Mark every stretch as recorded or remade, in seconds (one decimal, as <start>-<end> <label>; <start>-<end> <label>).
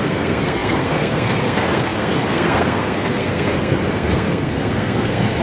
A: 0.0-5.4 remade